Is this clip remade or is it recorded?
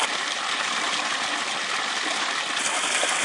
remade